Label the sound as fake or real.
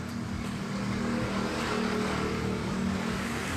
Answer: fake